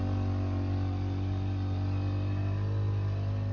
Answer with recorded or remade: recorded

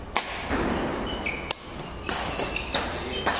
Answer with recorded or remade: recorded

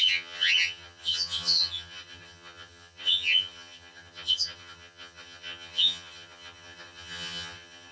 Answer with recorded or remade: remade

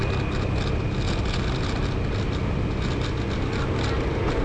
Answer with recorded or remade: recorded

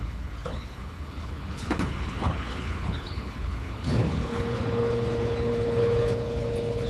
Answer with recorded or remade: remade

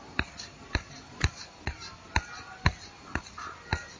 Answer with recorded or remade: recorded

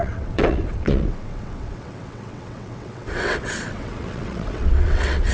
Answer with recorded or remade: remade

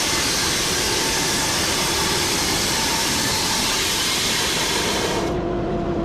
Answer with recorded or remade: remade